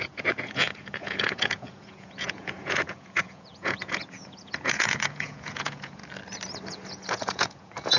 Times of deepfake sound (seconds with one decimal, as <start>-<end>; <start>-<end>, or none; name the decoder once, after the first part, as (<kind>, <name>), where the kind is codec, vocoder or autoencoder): 0.0-6.0 (vocoder, Vocos); 6.7-8.0